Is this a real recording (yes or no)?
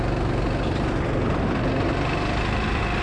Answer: yes